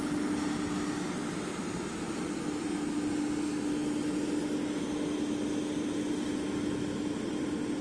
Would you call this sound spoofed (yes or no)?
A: no